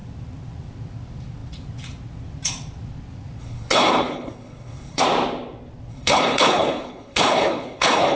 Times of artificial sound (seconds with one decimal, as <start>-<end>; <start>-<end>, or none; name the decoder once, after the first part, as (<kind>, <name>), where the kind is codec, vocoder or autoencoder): 3.4-5.0 (codec, HILCodec); 5.9-8.2